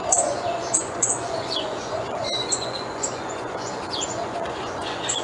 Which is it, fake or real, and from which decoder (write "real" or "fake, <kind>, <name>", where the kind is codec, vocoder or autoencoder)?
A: fake, vocoder, Vocos